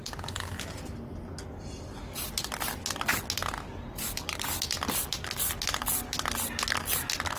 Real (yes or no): yes